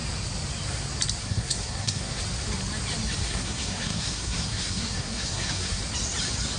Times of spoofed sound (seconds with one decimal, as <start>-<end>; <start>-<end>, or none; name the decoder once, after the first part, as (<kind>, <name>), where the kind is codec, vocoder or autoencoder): 1.2-2.2 (codec, SNAC); 3.2-5.8